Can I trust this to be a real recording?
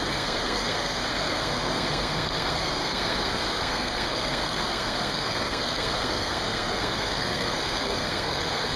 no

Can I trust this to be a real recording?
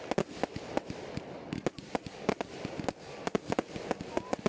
yes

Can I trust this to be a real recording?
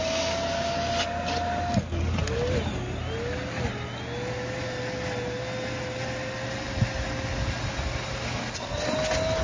yes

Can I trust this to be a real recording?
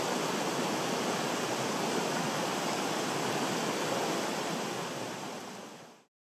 yes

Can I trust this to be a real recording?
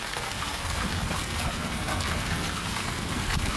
no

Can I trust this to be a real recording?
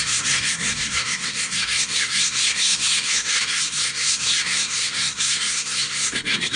no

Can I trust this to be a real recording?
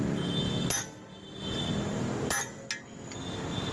yes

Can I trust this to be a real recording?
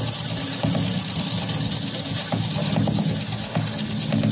yes